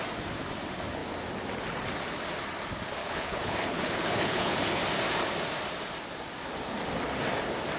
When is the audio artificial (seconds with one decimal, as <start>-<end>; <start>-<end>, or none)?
3.0-4.8